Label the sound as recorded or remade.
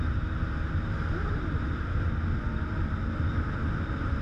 recorded